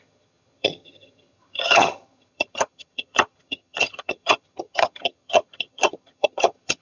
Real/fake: fake